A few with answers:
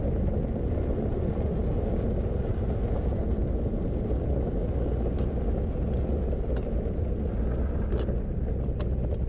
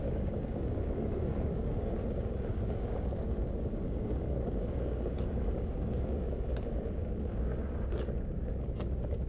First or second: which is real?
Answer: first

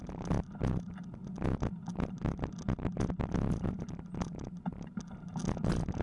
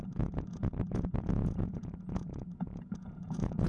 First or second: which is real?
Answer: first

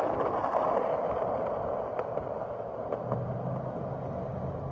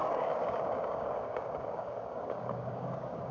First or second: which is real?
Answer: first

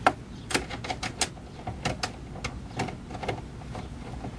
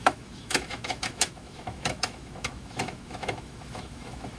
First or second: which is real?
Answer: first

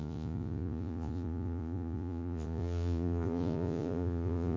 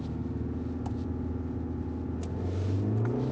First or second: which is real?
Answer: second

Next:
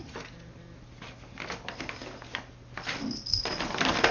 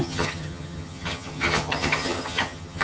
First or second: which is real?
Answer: first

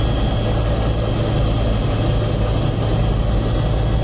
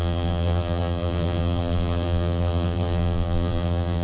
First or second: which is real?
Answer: first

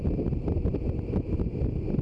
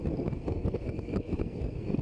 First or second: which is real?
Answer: first